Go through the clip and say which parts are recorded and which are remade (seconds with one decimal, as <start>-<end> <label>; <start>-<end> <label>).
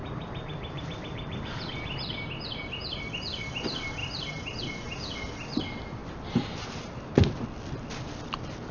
0.0-1.6 remade; 1.6-8.7 recorded